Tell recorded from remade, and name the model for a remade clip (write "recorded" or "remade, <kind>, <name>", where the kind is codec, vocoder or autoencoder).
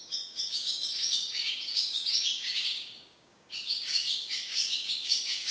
remade, codec, DAC